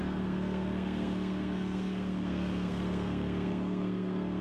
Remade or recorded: remade